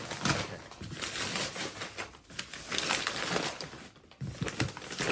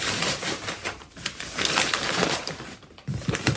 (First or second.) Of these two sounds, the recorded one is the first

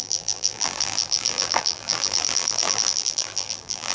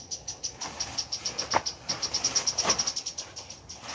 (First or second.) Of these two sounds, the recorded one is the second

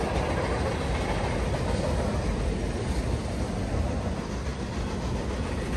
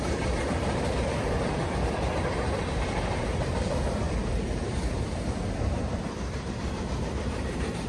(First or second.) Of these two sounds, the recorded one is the first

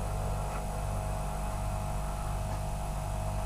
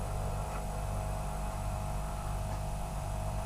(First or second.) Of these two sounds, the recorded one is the first